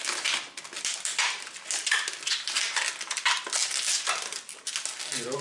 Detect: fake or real real